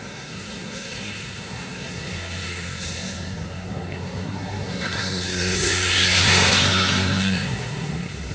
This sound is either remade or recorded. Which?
remade